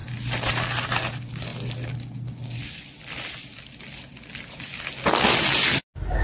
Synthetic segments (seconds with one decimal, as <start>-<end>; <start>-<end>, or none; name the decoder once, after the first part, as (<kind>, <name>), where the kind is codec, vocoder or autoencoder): none